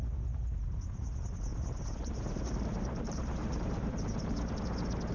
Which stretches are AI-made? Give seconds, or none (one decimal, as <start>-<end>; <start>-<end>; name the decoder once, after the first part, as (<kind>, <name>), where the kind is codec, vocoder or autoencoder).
1.5-4.6 (vocoder, BigVGAN v2)